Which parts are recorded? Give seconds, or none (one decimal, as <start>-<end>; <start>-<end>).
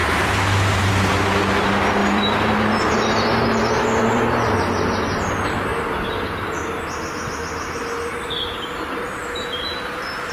0.9-2.0; 4.2-9.2